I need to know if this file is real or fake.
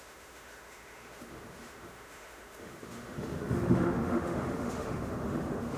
fake